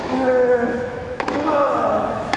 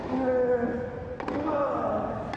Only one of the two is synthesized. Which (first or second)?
first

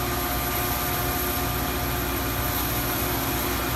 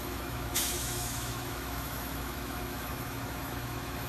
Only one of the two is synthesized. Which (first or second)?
second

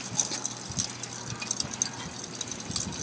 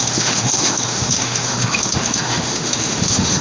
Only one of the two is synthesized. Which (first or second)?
second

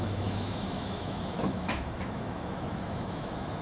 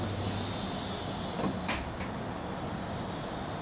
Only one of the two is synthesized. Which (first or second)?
first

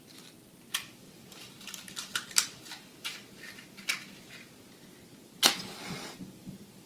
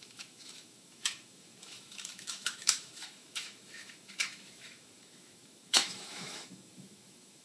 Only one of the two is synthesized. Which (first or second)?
second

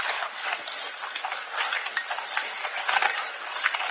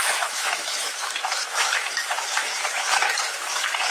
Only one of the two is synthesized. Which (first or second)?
second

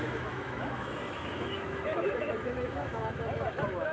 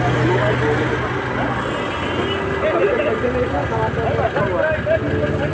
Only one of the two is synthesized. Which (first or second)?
first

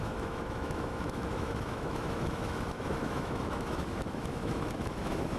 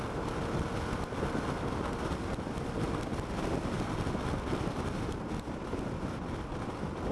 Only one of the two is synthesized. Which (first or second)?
first